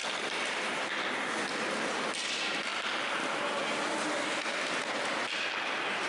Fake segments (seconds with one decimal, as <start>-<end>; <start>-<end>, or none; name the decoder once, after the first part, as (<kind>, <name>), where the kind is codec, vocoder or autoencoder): none